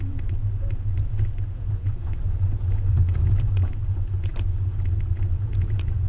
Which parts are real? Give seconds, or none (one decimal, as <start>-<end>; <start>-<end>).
none